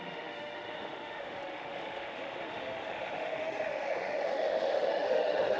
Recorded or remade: remade